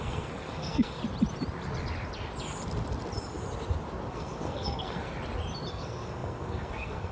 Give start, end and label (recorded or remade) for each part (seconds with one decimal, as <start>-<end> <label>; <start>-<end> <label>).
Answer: 0.0-1.0 remade; 1.0-4.1 recorded; 4.1-5.1 remade; 5.1-5.7 recorded; 5.7-7.1 remade